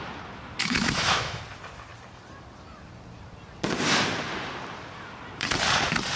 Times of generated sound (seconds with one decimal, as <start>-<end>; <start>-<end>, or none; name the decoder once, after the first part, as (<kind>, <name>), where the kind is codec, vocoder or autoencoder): 0.6-1.4 (autoencoder, DAC-VAE)